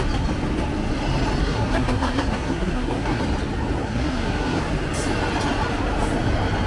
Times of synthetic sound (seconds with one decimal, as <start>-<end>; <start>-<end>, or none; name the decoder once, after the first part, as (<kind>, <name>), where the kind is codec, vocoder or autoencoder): 1.4-3.2 (codec, SNAC); 3.8-4.6